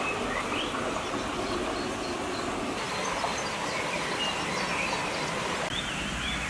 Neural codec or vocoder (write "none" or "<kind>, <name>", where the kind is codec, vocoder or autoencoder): none